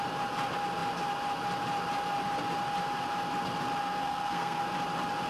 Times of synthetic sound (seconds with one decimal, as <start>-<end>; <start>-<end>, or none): 3.8-4.6